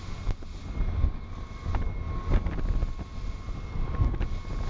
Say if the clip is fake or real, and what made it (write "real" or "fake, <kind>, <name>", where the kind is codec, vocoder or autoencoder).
real